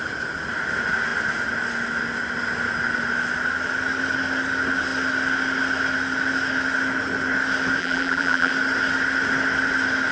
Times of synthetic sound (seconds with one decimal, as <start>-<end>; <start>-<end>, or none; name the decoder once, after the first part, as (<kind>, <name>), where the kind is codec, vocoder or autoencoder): 7.8-8.5 (vocoder, BigVGAN v2)